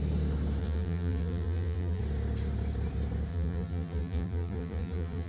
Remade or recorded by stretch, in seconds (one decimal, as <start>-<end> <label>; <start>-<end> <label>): 0.0-0.6 recorded; 0.6-2.0 remade; 2.0-3.3 recorded; 3.3-5.3 remade